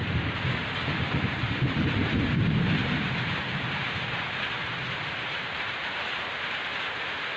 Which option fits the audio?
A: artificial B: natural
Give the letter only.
A